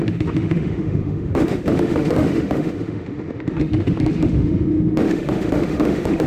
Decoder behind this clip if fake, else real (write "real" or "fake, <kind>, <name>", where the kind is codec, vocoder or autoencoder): fake, autoencoder, DAC-VAE